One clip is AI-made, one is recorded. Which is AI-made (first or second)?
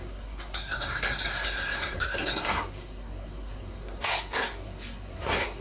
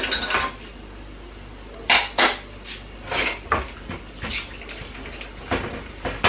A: first